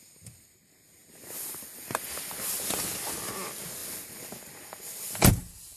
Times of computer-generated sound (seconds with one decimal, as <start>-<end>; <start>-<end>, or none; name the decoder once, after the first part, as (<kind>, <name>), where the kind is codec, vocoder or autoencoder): none